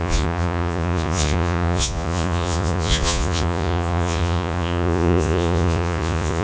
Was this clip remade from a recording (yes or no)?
yes